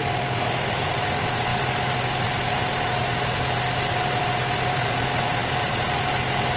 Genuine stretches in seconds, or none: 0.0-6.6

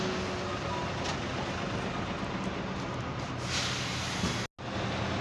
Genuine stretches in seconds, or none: 0.0-5.2